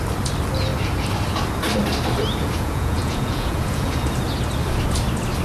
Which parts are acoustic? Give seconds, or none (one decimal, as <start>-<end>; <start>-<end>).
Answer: 0.0-2.4; 3.9-5.4